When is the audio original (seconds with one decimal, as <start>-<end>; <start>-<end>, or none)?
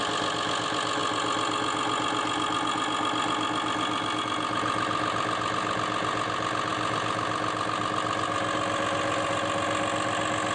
0.0-10.5